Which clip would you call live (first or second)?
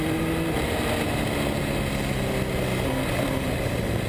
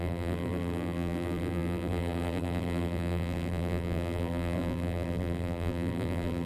first